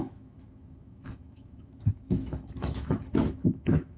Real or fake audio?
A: fake